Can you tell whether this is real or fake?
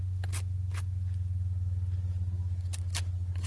real